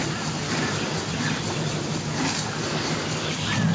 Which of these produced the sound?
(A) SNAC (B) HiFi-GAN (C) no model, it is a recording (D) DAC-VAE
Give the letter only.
C